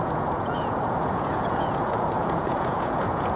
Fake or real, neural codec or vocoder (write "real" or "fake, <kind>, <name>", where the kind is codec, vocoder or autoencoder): fake, vocoder, Vocos